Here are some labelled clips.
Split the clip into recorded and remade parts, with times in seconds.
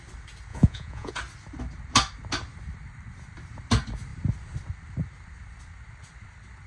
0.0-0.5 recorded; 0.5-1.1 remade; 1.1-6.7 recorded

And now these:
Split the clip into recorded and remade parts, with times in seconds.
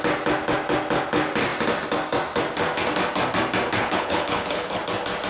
0.0-3.8 recorded; 3.8-4.8 remade; 4.8-5.3 recorded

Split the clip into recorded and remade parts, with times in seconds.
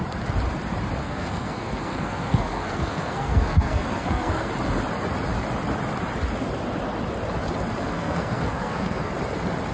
0.0-1.0 recorded; 1.0-4.5 remade; 4.5-7.8 recorded; 7.8-9.1 remade; 9.1-9.7 recorded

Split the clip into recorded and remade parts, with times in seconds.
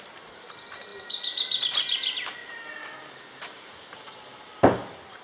0.0-5.2 recorded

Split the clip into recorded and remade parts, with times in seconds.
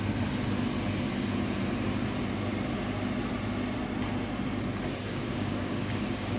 0.0-5.1 recorded; 5.1-6.4 remade